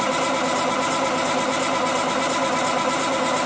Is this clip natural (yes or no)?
yes